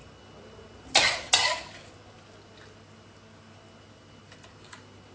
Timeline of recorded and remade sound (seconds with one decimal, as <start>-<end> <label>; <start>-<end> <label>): 0.0-5.1 recorded